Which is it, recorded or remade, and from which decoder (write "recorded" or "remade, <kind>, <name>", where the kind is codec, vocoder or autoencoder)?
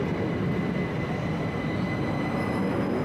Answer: recorded